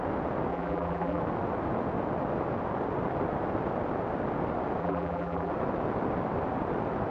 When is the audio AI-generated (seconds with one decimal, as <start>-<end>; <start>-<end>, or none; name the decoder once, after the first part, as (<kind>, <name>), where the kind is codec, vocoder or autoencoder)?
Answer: 0.5-1.2 (vocoder, BigVGAN v2); 4.8-5.5